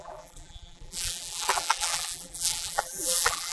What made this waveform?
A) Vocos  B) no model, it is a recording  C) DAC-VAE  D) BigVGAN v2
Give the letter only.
D